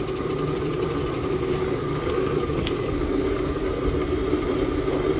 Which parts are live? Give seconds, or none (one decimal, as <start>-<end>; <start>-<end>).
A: 0.0-1.6; 3.8-5.2